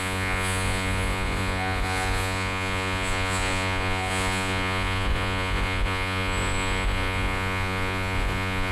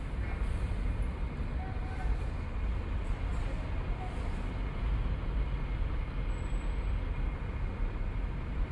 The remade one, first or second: first